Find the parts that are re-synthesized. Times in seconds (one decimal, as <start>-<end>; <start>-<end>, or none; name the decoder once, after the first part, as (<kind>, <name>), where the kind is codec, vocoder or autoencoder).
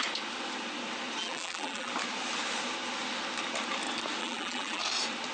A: 1.2-1.9 (vocoder, BigVGAN v2); 4.2-4.8